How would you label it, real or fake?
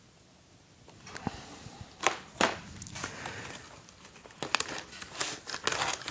real